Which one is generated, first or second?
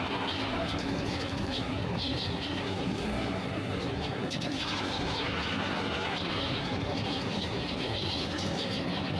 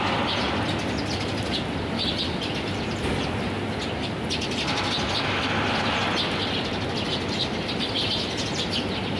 first